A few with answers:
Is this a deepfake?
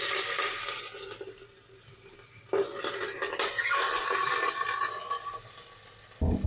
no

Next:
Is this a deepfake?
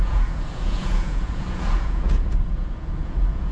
yes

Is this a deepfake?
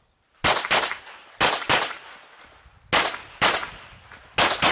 no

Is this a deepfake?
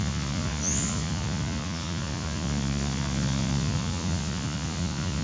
yes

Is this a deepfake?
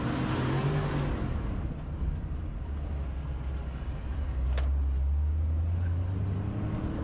no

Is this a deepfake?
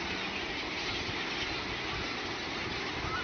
no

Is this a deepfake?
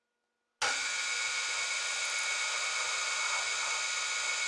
no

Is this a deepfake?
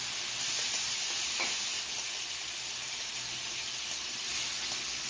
no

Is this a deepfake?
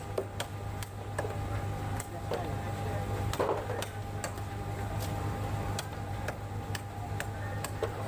no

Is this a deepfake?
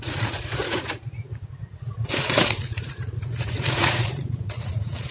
yes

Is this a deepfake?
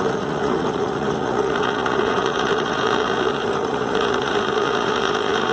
yes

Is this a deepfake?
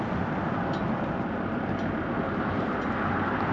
no